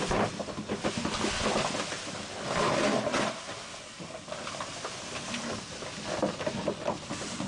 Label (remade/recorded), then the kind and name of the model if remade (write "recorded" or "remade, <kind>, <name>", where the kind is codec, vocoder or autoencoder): recorded